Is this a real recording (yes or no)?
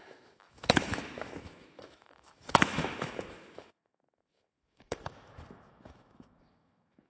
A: no